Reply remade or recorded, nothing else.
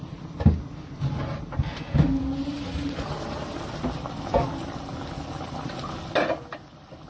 recorded